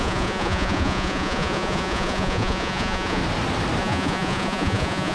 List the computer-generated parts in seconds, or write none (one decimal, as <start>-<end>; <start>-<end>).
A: 0.0-3.2; 3.8-5.1